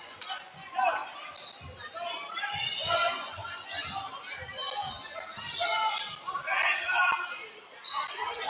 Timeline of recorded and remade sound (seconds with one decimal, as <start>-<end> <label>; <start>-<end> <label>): 0.0-1.0 remade; 1.0-2.3 recorded; 2.3-3.8 remade; 3.8-8.1 recorded; 8.1-8.5 remade

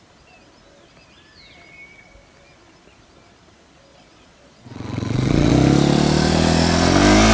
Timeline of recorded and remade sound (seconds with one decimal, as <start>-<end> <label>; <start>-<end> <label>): 0.0-3.9 recorded; 3.9-5.5 remade; 5.5-7.3 recorded

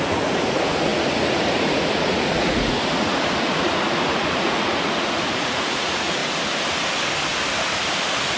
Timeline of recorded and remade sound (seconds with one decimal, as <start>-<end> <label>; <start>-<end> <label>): 0.0-6.2 remade; 6.2-8.4 recorded

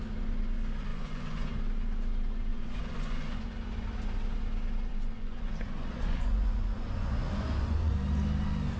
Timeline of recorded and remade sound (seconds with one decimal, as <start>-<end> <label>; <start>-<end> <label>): 0.0-0.9 recorded; 0.9-1.5 remade; 1.5-2.5 recorded; 2.5-3.4 remade; 3.4-4.9 recorded; 4.9-7.9 remade; 7.9-8.8 recorded

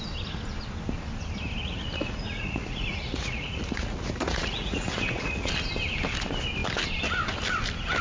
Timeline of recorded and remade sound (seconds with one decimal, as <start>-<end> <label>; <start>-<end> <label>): 0.0-1.6 recorded; 1.6-5.5 remade; 5.5-8.0 recorded